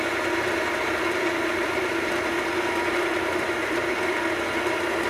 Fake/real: fake